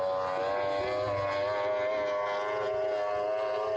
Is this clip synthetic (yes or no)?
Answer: no